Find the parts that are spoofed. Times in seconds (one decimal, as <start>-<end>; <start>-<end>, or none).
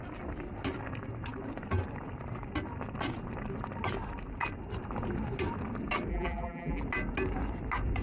6.1-6.8